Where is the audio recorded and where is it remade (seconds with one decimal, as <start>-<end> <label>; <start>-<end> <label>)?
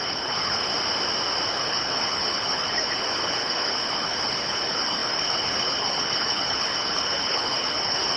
0.0-0.7 remade; 0.7-1.5 recorded; 1.5-8.2 remade